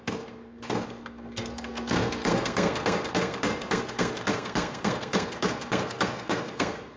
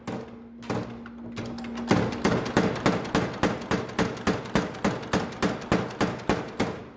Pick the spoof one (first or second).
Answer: first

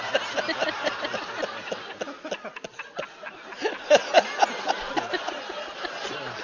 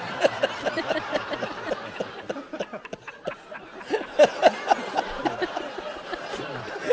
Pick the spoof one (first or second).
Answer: second